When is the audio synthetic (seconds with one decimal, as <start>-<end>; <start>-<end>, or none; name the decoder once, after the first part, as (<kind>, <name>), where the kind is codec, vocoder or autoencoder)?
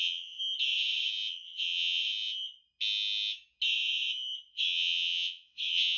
0.0-0.4 (vocoder, WaveNeXt); 1.3-2.0; 4.5-6.0